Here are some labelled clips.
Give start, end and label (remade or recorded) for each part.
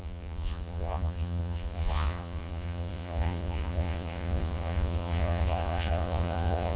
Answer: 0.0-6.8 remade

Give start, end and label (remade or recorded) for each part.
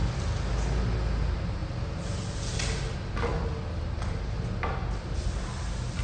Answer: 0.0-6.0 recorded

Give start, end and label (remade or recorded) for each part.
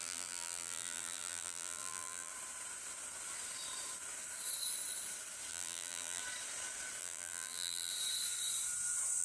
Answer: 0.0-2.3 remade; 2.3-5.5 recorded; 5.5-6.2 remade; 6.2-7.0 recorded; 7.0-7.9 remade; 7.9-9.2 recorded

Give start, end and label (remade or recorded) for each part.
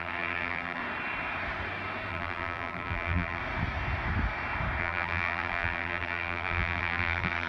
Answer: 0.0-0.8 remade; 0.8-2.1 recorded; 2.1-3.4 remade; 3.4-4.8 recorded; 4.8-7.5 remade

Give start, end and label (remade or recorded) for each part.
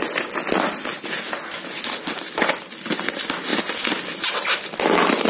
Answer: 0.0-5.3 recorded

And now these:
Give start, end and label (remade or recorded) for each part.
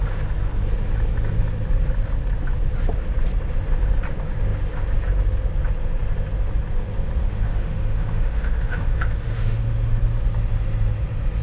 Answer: 0.0-7.2 recorded; 7.2-10.0 remade; 10.0-11.4 recorded